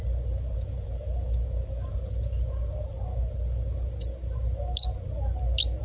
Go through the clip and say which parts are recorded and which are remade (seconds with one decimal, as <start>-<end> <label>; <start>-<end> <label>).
0.0-5.8 recorded